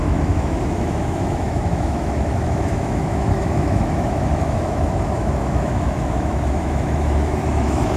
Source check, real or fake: fake